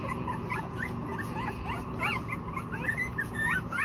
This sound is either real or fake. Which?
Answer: fake